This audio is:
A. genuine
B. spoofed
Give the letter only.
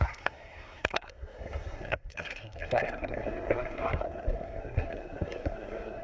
B